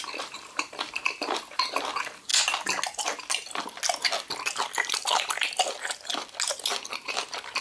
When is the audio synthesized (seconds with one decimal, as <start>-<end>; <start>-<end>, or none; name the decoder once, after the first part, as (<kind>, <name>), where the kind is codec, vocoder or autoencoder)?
0.0-2.3 (vocoder, BigVGAN v2); 6.9-7.6